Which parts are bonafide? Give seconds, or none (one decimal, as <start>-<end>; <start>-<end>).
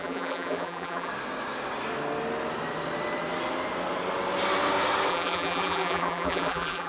1.1-5.1